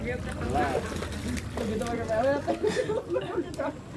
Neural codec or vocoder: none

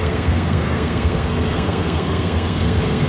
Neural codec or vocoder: codec, SNAC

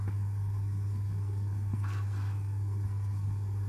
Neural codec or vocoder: codec, SNAC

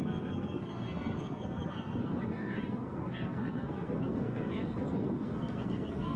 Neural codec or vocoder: codec, SNAC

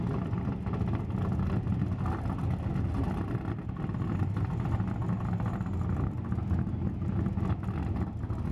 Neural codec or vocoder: none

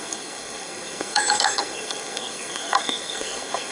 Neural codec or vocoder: codec, SNAC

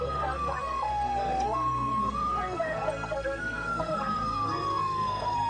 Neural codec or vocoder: codec, SNAC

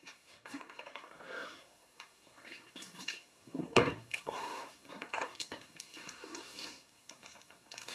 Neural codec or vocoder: codec, SNAC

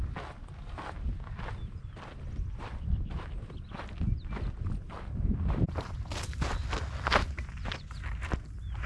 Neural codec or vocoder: none